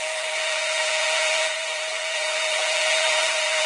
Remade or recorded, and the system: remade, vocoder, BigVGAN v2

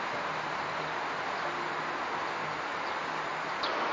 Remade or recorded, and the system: recorded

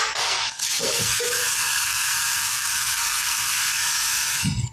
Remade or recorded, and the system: remade, codec, SNAC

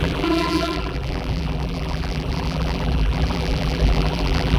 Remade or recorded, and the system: remade, vocoder, BigVGAN v2